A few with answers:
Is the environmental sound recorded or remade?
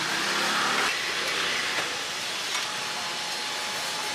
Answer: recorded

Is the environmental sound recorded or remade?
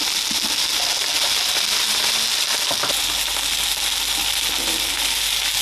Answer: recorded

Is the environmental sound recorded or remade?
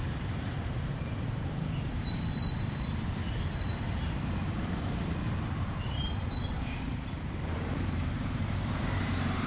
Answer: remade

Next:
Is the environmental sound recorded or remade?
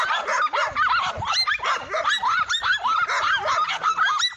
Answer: recorded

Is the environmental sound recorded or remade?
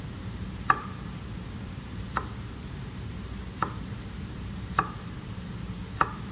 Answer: remade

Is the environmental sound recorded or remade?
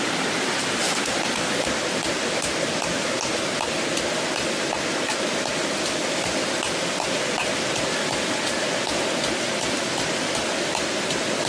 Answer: recorded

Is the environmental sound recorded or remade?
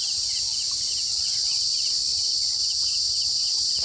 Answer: recorded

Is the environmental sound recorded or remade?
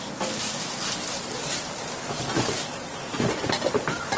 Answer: recorded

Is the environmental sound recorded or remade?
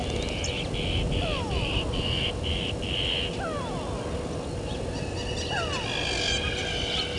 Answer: recorded